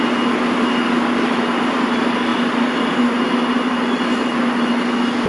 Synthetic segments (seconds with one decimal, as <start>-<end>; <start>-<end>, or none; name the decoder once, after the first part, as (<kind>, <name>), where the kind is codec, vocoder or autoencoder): none